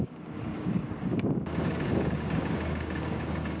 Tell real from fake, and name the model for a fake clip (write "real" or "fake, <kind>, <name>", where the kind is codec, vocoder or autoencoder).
fake, codec, DAC